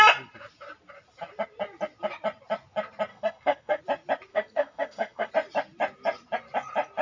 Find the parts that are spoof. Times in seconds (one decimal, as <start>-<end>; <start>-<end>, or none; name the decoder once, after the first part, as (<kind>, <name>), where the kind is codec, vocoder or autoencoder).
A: 3.1-3.8 (codec, SNAC); 4.3-5.3